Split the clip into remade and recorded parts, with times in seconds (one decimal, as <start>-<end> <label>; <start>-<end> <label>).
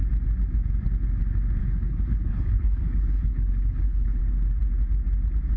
0.0-1.6 recorded; 1.6-4.2 remade; 4.2-5.6 recorded